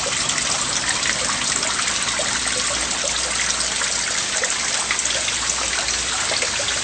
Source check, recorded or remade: recorded